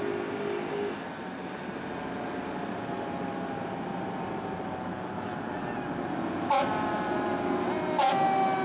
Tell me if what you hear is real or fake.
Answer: real